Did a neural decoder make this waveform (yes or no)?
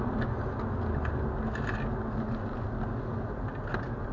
no